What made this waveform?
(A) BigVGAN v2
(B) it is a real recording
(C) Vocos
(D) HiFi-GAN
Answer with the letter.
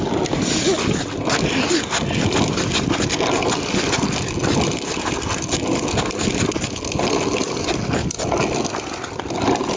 B